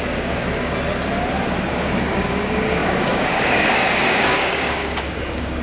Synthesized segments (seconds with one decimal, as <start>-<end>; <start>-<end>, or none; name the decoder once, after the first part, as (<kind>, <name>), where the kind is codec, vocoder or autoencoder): 0.0-0.4 (codec, DAC); 1.7-5.6